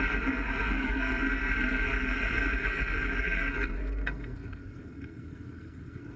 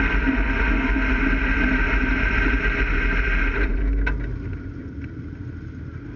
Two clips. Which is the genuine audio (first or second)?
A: second